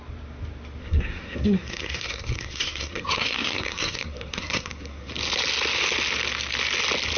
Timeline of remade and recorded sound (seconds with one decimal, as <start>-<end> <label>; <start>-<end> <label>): 0.0-0.8 recorded; 0.8-5.1 remade; 5.1-7.2 recorded